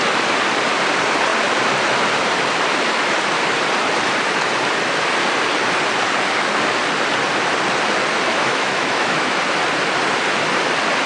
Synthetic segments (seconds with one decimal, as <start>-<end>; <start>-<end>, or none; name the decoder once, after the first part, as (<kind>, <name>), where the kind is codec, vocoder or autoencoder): 8.3-9.4 (autoencoder, DAC-VAE)